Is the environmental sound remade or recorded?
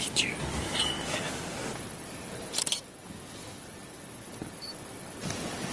recorded